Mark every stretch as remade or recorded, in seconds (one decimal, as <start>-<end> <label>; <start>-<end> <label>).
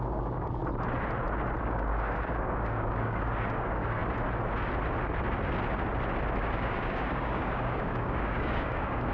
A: 0.0-0.6 remade; 0.6-1.6 recorded; 1.6-4.0 remade; 4.0-6.4 recorded; 6.4-9.1 remade